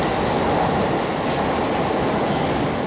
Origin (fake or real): real